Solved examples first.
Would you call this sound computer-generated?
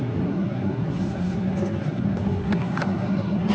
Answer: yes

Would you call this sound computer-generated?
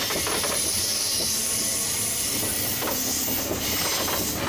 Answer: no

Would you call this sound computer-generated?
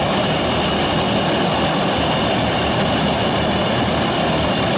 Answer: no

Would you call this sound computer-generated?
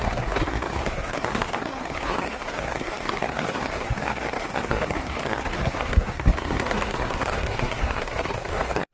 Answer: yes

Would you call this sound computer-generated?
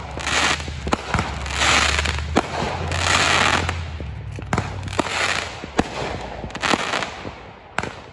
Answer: no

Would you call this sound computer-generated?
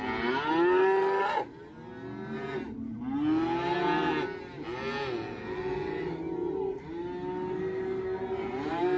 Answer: no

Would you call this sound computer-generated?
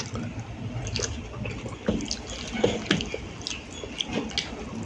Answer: no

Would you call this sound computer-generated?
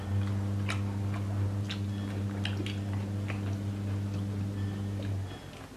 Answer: no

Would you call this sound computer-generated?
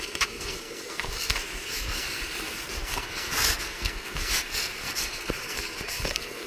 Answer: yes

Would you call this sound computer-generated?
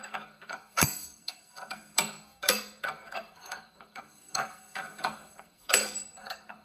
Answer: yes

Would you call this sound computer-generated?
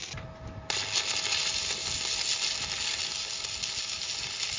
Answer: no